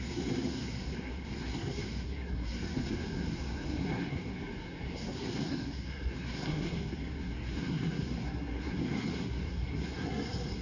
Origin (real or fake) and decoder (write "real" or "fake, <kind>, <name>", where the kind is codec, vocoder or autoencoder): fake, codec, SNAC